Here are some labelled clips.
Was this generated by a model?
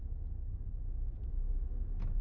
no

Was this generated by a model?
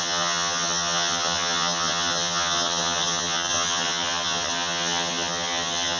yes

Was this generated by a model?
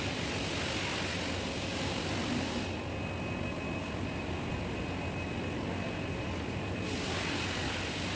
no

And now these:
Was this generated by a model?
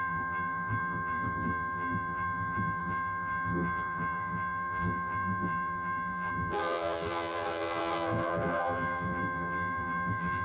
yes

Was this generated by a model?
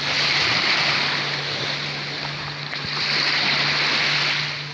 no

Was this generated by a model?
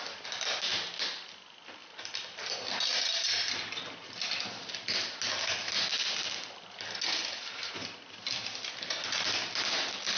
no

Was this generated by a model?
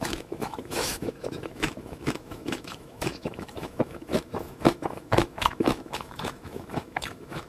yes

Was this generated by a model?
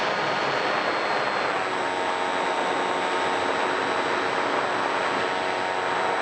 no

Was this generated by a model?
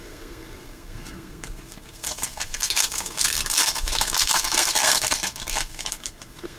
yes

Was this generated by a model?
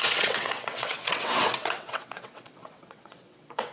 yes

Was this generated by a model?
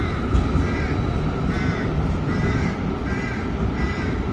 no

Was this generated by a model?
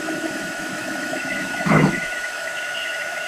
yes